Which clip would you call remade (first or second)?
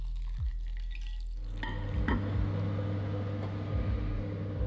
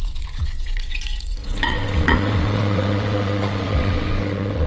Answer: second